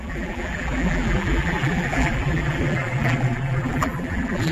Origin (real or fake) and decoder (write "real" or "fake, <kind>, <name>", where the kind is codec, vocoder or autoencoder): fake, vocoder, BigVGAN v2